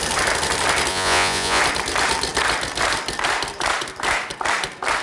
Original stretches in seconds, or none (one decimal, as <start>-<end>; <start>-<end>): 0.0-0.9; 1.6-5.0